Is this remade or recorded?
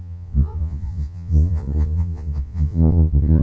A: remade